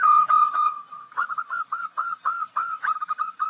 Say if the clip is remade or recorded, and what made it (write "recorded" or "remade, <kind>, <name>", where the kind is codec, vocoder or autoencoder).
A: remade, vocoder, WaveNeXt